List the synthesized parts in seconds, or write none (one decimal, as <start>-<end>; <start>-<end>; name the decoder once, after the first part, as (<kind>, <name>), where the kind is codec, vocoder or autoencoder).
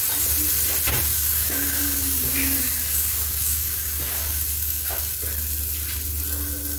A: 1.1-5.0 (codec, DAC)